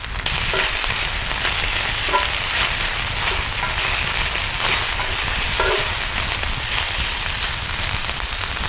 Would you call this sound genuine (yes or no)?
yes